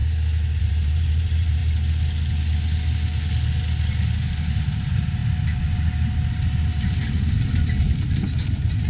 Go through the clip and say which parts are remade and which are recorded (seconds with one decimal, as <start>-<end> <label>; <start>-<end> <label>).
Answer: 0.0-0.6 recorded; 0.6-1.6 remade; 1.6-4.6 recorded; 4.6-5.2 remade; 5.2-6.3 recorded; 6.3-8.9 remade